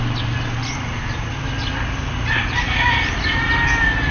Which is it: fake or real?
real